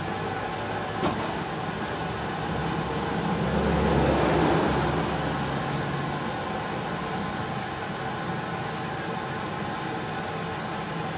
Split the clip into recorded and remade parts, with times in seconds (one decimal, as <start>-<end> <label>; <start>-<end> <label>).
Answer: 0.0-11.2 recorded

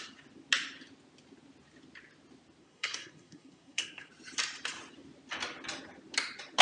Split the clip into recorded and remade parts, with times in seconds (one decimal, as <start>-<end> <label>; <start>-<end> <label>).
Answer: 0.0-2.6 recorded; 2.6-4.1 remade; 4.1-6.6 recorded